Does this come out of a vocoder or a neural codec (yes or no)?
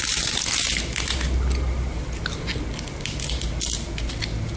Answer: no